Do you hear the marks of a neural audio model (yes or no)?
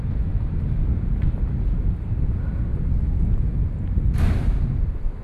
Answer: yes